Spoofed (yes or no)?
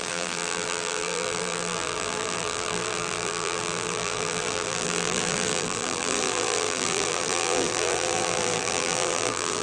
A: yes